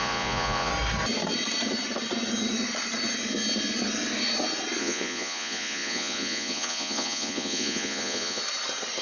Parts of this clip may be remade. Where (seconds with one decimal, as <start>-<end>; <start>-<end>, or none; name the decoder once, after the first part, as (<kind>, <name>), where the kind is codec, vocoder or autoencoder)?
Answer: 0.0-0.7 (vocoder, Vocos); 4.8-8.4